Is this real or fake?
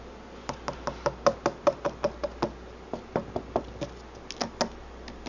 real